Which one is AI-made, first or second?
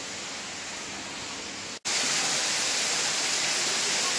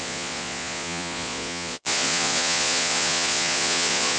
second